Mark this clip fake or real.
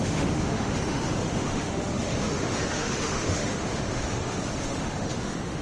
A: fake